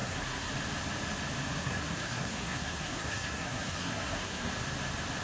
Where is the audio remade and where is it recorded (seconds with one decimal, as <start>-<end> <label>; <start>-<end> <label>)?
0.0-0.5 remade; 0.5-1.4 recorded; 1.4-4.5 remade; 4.5-5.2 recorded